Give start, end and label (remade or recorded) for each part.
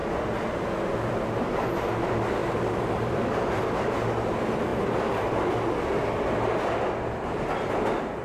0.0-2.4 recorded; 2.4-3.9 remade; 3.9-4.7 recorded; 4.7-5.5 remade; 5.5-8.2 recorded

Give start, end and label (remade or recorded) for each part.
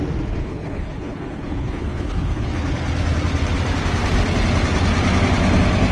0.0-0.4 recorded; 0.4-2.5 remade; 2.5-5.9 recorded